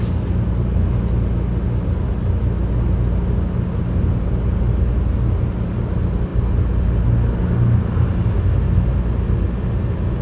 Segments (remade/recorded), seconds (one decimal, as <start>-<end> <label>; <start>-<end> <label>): 0.0-10.2 recorded